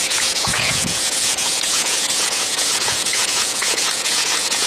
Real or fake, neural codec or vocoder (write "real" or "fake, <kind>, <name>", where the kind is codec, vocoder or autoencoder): fake, vocoder, Vocos